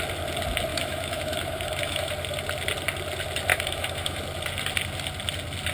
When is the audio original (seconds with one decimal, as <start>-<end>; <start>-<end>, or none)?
0.0-0.7; 2.1-3.5; 4.2-5.7